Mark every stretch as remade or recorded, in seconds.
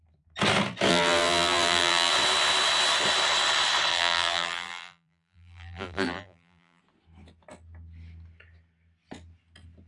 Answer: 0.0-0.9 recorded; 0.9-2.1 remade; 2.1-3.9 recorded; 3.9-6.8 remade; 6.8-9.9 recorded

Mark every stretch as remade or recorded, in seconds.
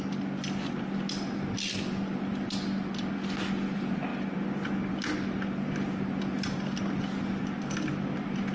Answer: 0.0-8.5 recorded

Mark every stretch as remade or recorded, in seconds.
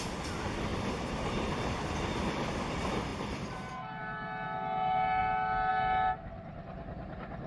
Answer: 0.0-0.7 recorded; 0.7-2.2 remade; 2.2-3.1 recorded; 3.1-4.0 remade; 4.0-7.5 recorded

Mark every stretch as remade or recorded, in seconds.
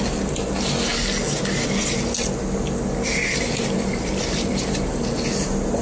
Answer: 0.0-3.2 recorded; 3.2-4.6 remade; 4.6-5.8 recorded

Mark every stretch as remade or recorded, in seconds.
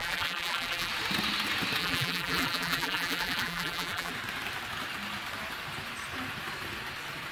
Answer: 0.0-0.9 remade; 0.9-1.8 recorded; 1.8-4.1 remade; 4.1-7.3 recorded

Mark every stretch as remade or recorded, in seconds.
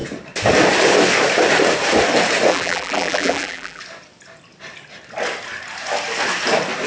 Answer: 0.0-2.5 recorded; 2.5-3.8 remade; 3.8-6.9 recorded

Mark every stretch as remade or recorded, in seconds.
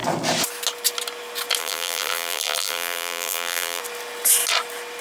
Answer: 0.0-1.6 recorded; 1.6-3.8 remade; 3.8-5.0 recorded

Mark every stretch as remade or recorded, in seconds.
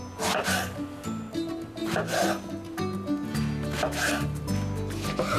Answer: 0.0-5.4 recorded